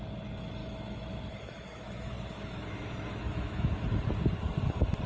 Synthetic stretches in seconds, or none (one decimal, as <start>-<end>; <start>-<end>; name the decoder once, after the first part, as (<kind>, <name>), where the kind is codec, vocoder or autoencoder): 0.6-3.7 (autoencoder, DAC-VAE)